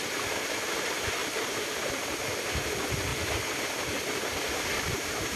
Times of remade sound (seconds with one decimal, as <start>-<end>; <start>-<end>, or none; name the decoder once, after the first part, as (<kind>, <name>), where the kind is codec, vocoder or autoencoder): 1.2-1.8 (vocoder, BigVGAN v2)